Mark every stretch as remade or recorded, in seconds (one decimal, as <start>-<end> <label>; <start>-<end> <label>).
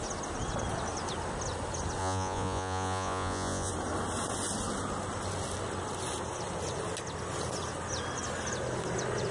0.0-2.0 recorded; 2.0-3.7 remade; 3.7-9.3 recorded